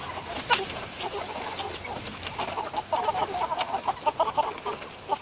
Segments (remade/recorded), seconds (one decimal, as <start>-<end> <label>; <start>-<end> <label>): 0.0-3.1 remade; 3.1-5.2 recorded